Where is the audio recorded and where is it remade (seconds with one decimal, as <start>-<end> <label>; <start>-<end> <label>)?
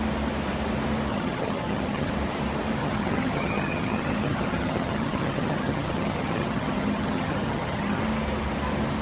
0.0-1.1 recorded; 1.1-2.1 remade; 2.1-2.8 recorded; 2.8-8.0 remade; 8.0-9.0 recorded